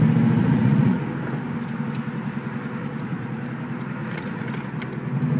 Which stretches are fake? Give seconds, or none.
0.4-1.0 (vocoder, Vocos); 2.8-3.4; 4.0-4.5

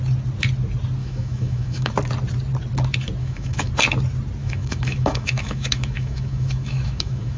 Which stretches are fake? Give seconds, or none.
1.0-1.9 (autoencoder, DAC-VAE); 3.2-3.7; 4.4-7.4